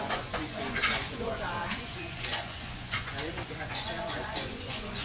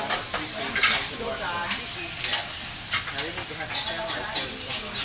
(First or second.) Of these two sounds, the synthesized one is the first